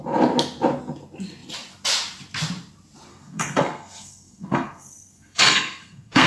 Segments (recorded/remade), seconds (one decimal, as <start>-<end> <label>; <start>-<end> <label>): 0.0-3.1 recorded; 3.1-6.3 remade